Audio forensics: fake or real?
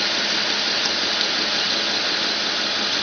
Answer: real